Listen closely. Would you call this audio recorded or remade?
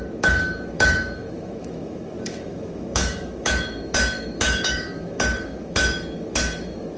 remade